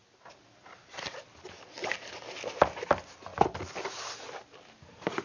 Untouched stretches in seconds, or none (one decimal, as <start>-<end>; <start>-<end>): 0.0-5.2